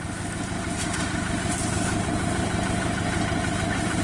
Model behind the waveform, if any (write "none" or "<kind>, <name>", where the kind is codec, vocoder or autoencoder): vocoder, BigVGAN v2